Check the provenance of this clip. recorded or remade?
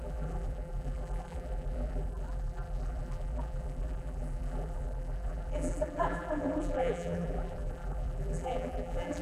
remade